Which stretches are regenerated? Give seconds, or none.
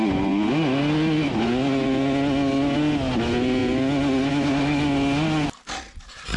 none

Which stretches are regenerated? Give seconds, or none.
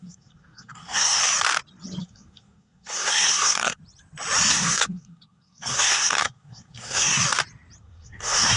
0.0-1.2 (codec, SNAC); 2.0-3.8; 4.5-7.2; 7.8-8.6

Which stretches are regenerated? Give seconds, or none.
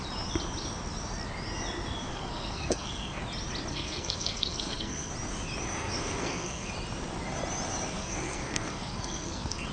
2.1-3.2 (codec, SNAC); 3.7-5.1; 5.7-6.7; 8.0-9.7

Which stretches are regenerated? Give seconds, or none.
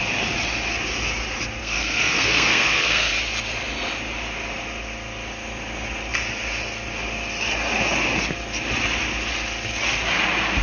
1.6-3.1 (codec, SNAC)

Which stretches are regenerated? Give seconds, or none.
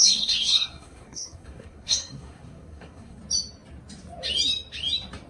0.0-3.2 (codec, SNAC)